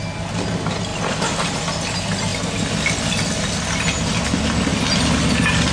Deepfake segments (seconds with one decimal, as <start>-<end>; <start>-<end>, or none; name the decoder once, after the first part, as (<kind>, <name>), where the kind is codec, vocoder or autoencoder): none